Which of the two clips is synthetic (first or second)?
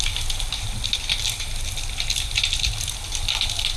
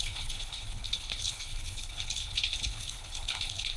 second